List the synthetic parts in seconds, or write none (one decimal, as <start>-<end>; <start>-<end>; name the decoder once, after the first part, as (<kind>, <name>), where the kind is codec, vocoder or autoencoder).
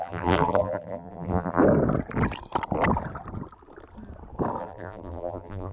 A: 0.0-1.6 (vocoder, BigVGAN v2); 4.6-5.7